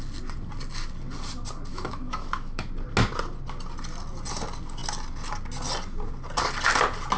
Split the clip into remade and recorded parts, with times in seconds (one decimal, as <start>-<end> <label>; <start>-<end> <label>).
0.0-1.7 recorded; 1.7-2.7 remade; 2.7-7.2 recorded